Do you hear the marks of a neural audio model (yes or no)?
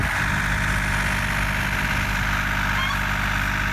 no